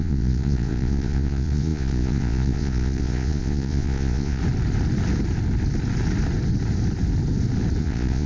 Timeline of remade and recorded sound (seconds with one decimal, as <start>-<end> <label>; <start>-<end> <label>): 0.0-4.4 remade; 4.4-7.8 recorded; 7.8-8.3 remade